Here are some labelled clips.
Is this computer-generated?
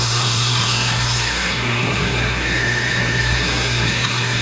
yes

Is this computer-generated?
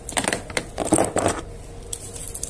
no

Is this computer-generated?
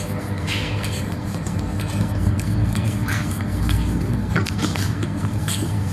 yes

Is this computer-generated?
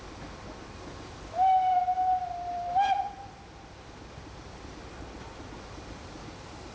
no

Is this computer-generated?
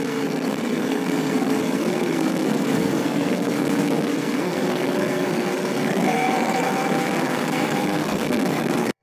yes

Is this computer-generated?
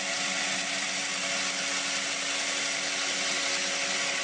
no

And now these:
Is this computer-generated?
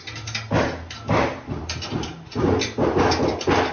no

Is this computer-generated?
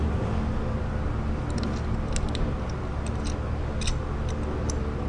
no